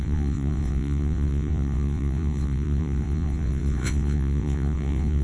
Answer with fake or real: fake